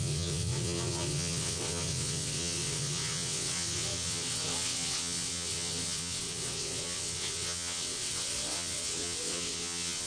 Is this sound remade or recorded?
remade